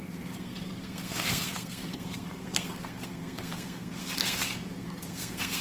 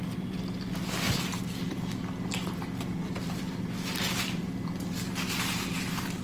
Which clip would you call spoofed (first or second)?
first